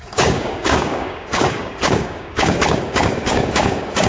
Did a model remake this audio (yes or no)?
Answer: yes